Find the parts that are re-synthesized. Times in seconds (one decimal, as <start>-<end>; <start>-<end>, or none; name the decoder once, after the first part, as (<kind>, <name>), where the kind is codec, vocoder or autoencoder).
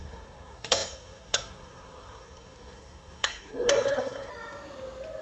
0.0-4.3 (codec, SNAC)